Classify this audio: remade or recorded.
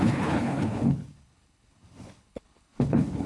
remade